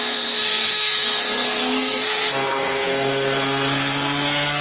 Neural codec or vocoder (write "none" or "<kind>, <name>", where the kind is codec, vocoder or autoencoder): codec, SNAC